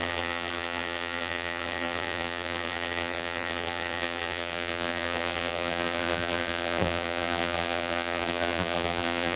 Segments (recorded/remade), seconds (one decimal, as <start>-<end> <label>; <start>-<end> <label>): 0.0-9.4 remade